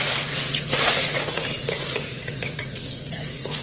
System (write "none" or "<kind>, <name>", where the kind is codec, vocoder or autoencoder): vocoder, Vocos